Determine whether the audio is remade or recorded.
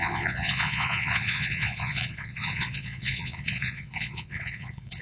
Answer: remade